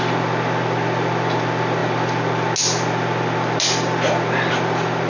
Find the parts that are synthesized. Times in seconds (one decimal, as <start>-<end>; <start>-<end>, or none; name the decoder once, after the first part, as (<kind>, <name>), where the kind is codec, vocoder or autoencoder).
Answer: none